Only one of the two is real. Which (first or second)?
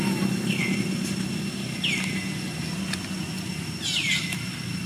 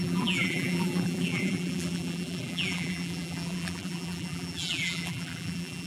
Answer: first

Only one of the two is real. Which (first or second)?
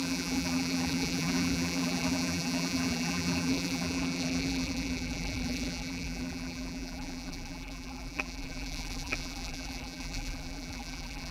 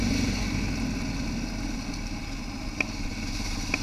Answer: second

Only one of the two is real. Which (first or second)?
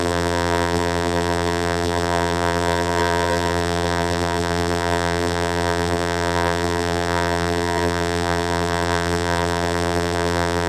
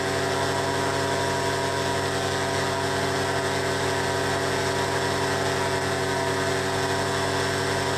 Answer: second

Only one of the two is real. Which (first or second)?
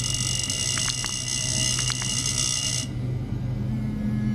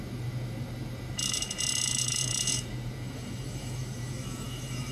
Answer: first